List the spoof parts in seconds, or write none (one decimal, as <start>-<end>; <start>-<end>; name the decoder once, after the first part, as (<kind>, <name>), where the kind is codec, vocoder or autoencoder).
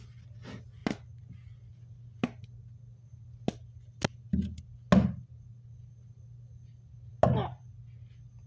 none